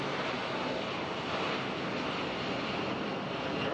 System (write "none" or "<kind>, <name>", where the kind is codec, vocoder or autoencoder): none